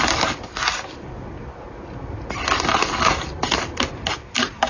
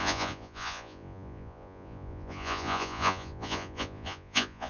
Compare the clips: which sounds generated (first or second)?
second